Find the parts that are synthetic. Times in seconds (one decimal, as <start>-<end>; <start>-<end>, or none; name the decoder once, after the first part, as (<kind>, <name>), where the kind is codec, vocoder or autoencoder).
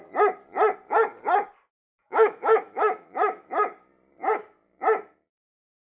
1.8-3.5 (autoencoder, DAC-VAE)